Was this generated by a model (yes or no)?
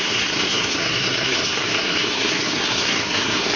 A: yes